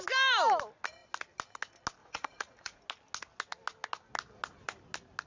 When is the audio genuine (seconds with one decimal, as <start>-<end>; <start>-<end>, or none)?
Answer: 0.0-2.0; 2.8-5.3